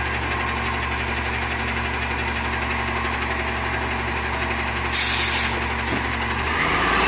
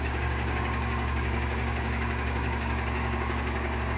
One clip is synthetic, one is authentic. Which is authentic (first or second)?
first